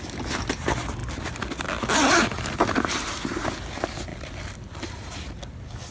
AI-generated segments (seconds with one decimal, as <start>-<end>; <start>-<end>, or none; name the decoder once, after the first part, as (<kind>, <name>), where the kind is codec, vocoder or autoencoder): 4.1-5.3 (vocoder, BigVGAN v2)